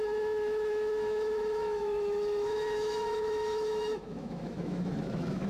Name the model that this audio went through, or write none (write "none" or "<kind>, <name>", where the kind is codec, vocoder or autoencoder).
autoencoder, DAC-VAE